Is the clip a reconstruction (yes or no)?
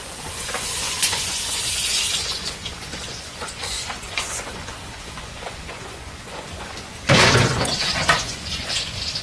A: yes